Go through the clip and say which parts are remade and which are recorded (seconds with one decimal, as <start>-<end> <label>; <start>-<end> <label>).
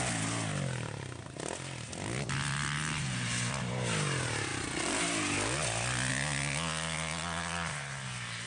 0.0-8.5 recorded